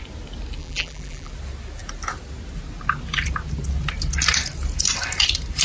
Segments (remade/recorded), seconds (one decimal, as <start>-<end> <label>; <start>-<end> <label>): 0.0-0.6 recorded; 0.6-1.3 remade; 1.3-5.6 recorded

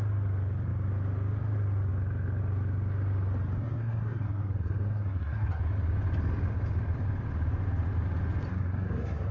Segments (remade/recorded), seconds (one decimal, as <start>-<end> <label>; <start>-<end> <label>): 0.0-3.6 recorded; 3.6-5.6 remade; 5.6-8.5 recorded; 8.5-9.3 remade

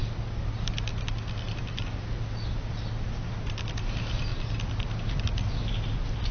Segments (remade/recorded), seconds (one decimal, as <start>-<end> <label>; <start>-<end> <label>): 0.0-6.3 recorded

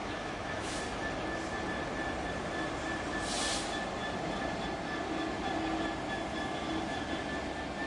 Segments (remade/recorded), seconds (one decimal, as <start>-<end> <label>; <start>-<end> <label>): 0.0-0.8 remade; 0.8-7.9 recorded